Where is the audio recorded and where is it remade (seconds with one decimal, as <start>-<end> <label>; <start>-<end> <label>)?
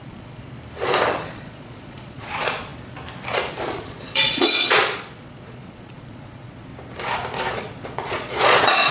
0.0-0.4 remade; 0.4-1.1 recorded; 1.1-2.7 remade; 2.7-3.5 recorded; 3.5-6.7 remade; 6.7-7.5 recorded; 7.5-8.9 remade